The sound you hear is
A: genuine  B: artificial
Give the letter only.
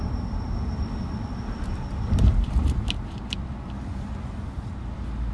B